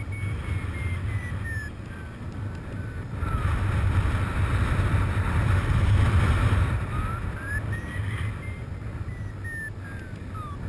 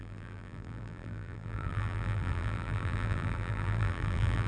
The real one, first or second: first